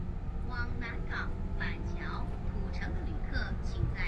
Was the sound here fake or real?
real